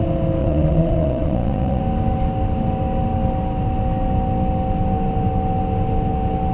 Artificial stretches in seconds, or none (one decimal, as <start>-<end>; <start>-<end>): 0.4-1.8